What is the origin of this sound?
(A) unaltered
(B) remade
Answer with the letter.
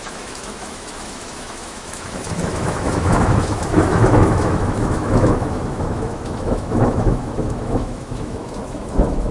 B